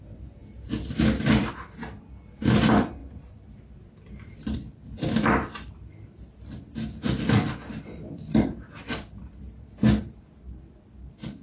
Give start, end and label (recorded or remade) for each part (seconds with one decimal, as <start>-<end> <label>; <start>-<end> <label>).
0.0-0.4 remade; 0.4-1.2 recorded; 1.2-11.4 remade

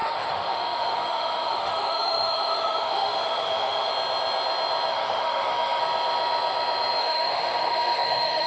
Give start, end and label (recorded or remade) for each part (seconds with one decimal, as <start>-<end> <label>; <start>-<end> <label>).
0.0-3.9 remade; 3.9-4.9 recorded; 4.9-5.8 remade; 5.8-7.0 recorded; 7.0-8.5 remade